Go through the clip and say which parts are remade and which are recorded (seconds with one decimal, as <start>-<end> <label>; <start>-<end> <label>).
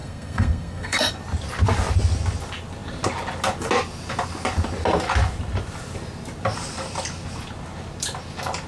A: 0.0-1.1 remade; 1.1-8.7 recorded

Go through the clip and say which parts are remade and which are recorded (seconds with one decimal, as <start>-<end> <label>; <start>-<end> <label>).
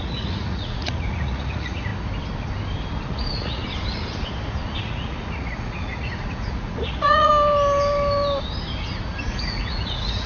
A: 0.0-1.9 remade; 1.9-3.0 recorded; 3.0-3.6 remade; 3.6-4.8 recorded; 4.8-7.3 remade; 7.3-9.2 recorded; 9.2-10.3 remade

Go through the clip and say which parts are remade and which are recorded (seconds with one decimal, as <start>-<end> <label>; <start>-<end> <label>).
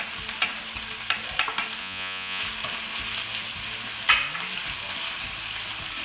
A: 0.0-1.8 recorded; 1.8-2.4 remade; 2.4-6.0 recorded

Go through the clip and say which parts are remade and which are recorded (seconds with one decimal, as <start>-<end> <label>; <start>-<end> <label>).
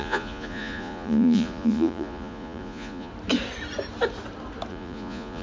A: 0.0-3.1 remade; 3.1-4.7 recorded; 4.7-5.4 remade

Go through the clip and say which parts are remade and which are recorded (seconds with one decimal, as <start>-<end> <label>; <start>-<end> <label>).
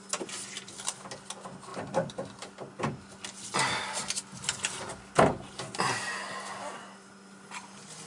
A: 0.0-8.1 recorded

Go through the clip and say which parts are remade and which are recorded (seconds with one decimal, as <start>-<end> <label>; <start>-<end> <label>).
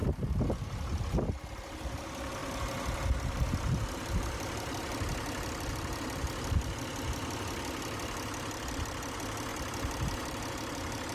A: 0.0-11.1 recorded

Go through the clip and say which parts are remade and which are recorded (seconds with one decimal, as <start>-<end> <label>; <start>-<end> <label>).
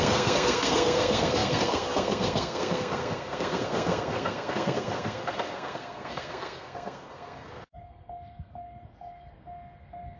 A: 0.0-10.2 remade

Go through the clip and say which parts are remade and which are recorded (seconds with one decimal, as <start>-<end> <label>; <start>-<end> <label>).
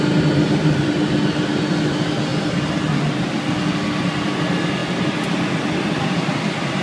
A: 0.0-6.8 recorded